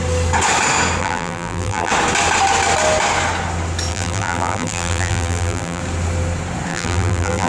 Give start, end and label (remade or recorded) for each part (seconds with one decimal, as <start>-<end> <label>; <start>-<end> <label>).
0.0-1.0 recorded; 1.0-1.9 remade; 1.9-3.9 recorded; 3.9-5.8 remade; 5.8-6.7 recorded; 6.7-7.5 remade

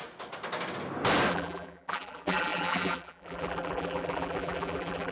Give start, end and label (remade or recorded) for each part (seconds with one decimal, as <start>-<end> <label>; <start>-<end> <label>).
0.0-1.3 recorded; 1.3-5.1 remade

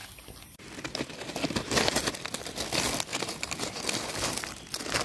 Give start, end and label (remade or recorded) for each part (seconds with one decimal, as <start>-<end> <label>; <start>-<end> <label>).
0.0-3.1 recorded; 3.1-3.8 remade; 3.8-5.0 recorded

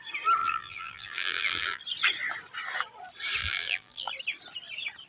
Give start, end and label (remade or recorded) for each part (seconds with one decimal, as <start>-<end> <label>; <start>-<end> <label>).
0.0-0.4 recorded; 0.4-1.8 remade; 1.8-3.4 recorded; 3.4-4.1 remade; 4.1-5.1 recorded

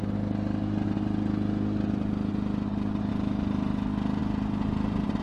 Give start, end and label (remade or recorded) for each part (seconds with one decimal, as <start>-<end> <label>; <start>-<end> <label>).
0.0-5.2 recorded

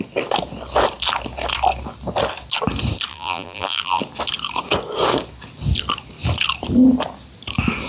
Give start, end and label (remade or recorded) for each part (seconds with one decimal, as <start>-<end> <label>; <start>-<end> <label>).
0.0-3.1 recorded; 3.1-4.0 remade; 4.0-7.9 recorded